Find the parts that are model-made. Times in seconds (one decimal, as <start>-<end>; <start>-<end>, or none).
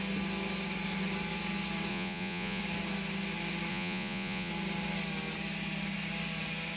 1.9-2.6; 3.7-4.5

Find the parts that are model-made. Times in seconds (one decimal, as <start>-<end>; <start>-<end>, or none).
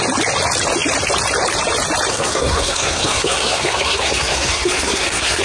2.1-5.4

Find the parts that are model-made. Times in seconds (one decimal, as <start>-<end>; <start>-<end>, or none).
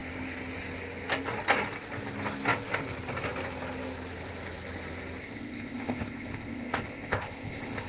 5.2-7.9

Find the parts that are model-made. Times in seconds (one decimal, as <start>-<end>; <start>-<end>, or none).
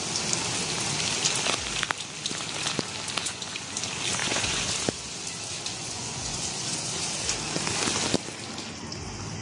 3.2-3.7; 4.2-4.7; 5.7-6.9